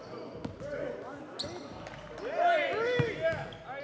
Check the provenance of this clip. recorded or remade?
recorded